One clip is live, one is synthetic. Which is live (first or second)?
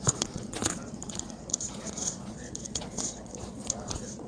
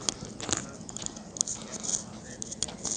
second